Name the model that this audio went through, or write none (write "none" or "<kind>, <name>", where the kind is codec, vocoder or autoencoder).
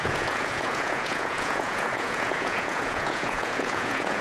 vocoder, Vocos